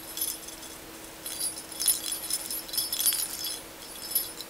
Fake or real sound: real